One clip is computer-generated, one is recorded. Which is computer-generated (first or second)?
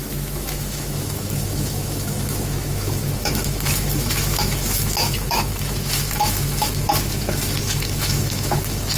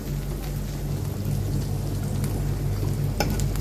first